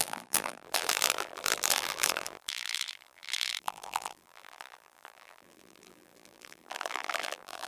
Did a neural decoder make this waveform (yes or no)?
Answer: yes